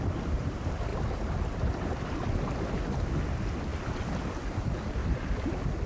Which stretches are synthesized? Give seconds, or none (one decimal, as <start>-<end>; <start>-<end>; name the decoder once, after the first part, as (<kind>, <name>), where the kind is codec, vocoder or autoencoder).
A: 0.0-0.9 (vocoder, BigVGAN v2); 3.2-5.0